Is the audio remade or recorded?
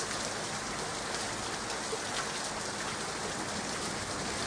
recorded